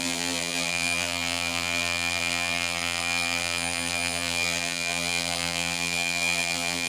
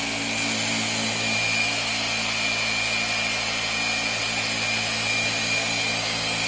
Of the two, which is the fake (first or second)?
first